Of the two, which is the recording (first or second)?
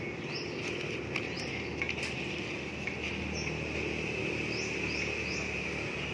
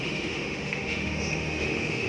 first